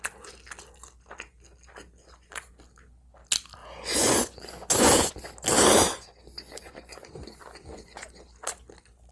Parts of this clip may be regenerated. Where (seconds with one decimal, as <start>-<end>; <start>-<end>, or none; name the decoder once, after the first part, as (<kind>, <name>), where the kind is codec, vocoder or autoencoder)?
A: 2.0-2.5 (vocoder, Vocos); 3.6-5.1; 5.9-8.3

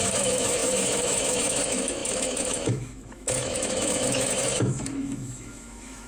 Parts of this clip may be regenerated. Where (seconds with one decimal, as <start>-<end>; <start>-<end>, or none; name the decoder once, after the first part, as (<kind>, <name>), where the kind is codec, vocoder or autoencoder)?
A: 0.0-6.1 (autoencoder, DAC-VAE)